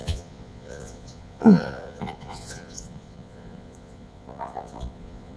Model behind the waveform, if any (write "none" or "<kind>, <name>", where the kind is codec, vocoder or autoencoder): vocoder, Vocos